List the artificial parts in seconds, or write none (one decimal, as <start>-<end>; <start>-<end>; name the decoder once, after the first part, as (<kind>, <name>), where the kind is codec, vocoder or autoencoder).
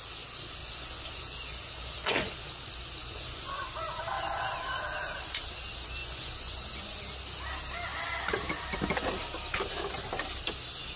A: 0.6-2.3 (vocoder, Vocos); 3.0-4.0; 6.0-7.0